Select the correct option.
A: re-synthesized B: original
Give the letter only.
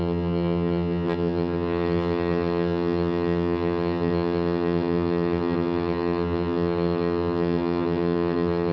A